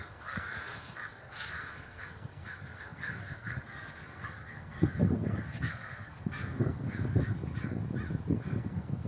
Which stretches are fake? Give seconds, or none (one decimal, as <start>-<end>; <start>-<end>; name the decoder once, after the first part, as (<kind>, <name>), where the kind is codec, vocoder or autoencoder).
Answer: 0.0-7.8 (codec, SNAC); 8.3-9.1

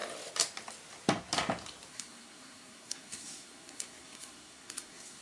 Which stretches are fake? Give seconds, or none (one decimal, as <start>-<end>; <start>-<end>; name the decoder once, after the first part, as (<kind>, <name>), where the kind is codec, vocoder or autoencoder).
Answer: 1.9-5.2 (codec, SNAC)

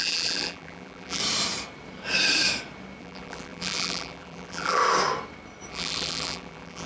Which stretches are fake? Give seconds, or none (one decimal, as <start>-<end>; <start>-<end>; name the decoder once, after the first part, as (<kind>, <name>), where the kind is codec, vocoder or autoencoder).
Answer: 0.0-1.2 (vocoder, BigVGAN v2); 3.0-4.8; 5.7-6.9

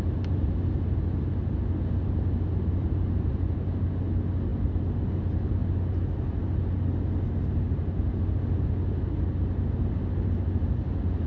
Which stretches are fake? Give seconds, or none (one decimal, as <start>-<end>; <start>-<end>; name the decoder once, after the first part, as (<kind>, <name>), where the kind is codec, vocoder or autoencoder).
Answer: none

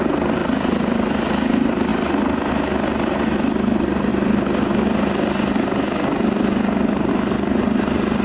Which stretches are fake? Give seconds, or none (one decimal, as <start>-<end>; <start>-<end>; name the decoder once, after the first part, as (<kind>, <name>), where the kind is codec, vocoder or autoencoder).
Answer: none

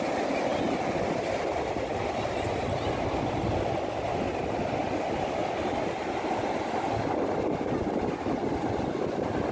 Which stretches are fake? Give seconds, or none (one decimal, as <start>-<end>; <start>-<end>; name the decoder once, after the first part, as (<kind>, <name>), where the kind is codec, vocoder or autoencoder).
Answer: none

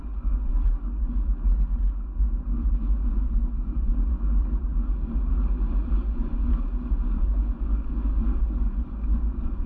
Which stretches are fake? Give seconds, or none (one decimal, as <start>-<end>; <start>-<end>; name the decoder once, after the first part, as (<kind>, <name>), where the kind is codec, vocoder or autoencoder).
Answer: 0.0-0.5 (vocoder, Vocos); 3.1-3.9; 5.9-6.4; 7.2-9.7

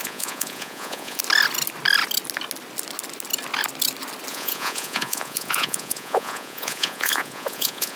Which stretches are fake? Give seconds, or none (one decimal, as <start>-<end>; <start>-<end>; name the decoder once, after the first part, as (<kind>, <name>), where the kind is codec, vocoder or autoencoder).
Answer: 0.0-1.2 (vocoder, Vocos); 4.3-8.0